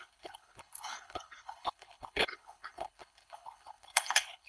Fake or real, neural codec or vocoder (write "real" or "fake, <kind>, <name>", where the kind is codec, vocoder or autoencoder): fake, codec, HILCodec